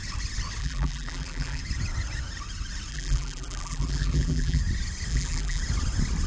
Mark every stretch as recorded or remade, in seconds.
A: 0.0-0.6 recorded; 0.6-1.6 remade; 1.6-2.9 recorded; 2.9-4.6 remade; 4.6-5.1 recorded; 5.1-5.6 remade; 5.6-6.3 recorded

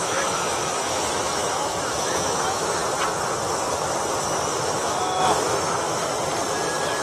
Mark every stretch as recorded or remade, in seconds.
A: 0.0-2.8 remade; 2.8-4.5 recorded; 4.5-6.1 remade; 6.1-7.0 recorded

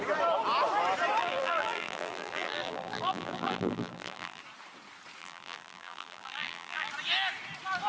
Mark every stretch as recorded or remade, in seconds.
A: 0.0-1.2 recorded; 1.2-4.4 remade; 4.4-5.2 recorded; 5.2-6.9 remade; 6.9-7.9 recorded

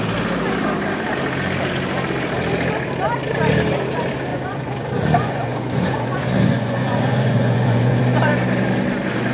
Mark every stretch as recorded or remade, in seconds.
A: 0.0-4.3 recorded; 4.3-8.0 remade; 8.0-9.3 recorded

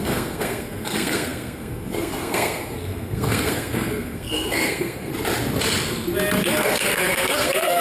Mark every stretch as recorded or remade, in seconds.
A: 0.0-5.1 remade; 5.1-6.5 recorded; 6.5-7.8 remade

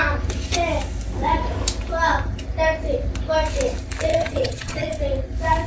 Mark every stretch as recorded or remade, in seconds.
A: 0.0-4.1 recorded; 4.1-5.0 remade; 5.0-5.7 recorded

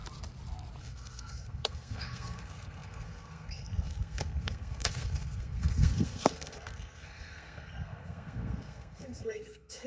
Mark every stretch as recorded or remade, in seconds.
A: 0.0-0.8 recorded; 0.8-9.9 remade

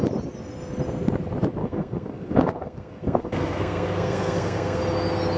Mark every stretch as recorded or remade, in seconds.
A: 0.0-1.6 recorded; 1.6-4.8 remade; 4.8-5.4 recorded